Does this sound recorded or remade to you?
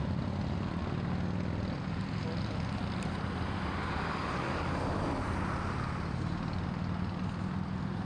recorded